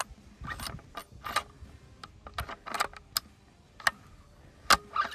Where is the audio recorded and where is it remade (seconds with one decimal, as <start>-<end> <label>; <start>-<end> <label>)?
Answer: 0.0-5.1 recorded